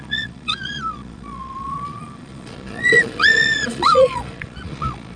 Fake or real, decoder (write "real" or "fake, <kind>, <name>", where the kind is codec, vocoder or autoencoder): fake, vocoder, Vocos